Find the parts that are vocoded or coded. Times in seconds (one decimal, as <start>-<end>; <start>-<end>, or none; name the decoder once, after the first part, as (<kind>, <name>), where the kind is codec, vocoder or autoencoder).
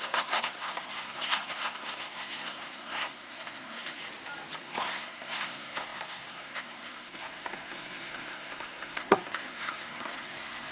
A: 0.0-4.0 (codec, SNAC); 4.6-10.7